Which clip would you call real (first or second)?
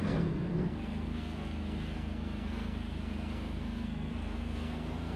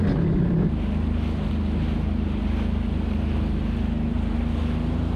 second